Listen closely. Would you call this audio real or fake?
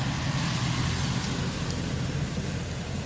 real